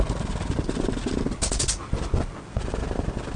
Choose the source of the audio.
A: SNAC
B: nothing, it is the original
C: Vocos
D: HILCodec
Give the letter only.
B